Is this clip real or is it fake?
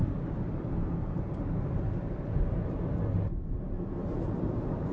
real